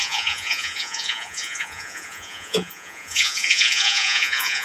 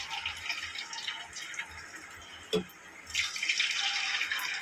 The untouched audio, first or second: second